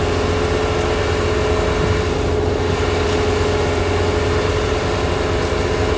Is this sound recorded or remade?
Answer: recorded